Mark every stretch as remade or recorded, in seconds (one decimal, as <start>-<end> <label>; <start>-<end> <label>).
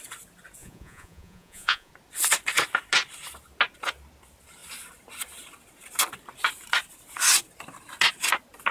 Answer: 0.0-0.6 recorded; 0.6-1.9 remade; 1.9-8.7 recorded